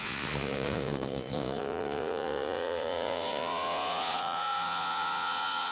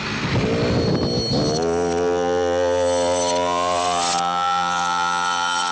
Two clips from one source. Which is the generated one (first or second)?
first